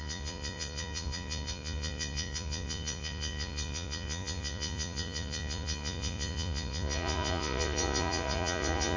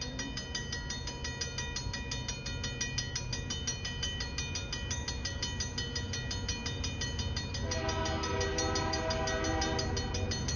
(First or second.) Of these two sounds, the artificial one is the first